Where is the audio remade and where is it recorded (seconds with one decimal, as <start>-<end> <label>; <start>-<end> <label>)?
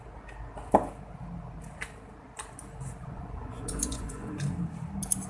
0.0-3.0 recorded; 3.0-4.3 remade; 4.3-5.3 recorded